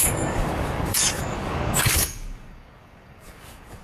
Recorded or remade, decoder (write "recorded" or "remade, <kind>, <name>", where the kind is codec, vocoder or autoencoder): remade, codec, DAC